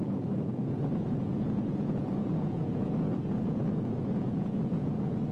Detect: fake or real fake